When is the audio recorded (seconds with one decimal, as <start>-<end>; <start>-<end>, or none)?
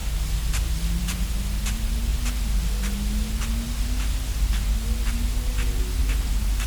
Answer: 0.0-6.7